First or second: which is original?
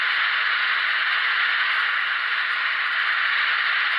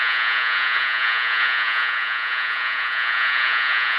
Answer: first